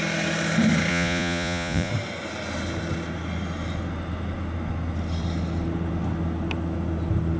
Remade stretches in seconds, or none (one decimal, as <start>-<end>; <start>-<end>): 0.9-1.9

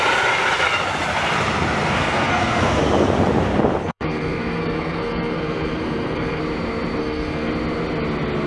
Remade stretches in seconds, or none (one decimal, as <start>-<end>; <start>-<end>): 1.8-2.8; 3.8-6.4; 7.0-7.5

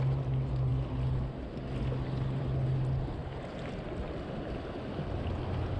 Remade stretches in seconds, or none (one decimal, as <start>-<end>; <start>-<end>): none

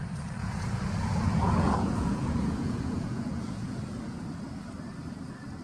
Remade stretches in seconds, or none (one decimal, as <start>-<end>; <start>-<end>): 0.4-3.8

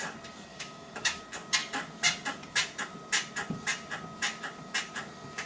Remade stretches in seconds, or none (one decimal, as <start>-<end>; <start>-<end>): 0.5-1.2

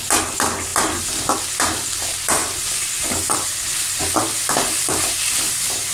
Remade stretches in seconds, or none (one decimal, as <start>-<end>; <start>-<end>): none

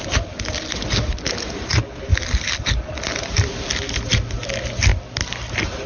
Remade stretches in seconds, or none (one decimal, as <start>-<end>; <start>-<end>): none